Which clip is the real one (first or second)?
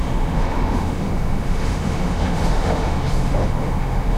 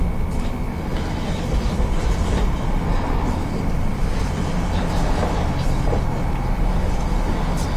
second